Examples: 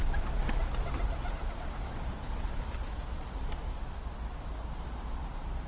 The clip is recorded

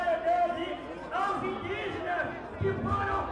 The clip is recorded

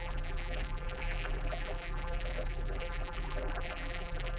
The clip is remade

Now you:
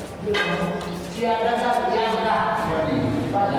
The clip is recorded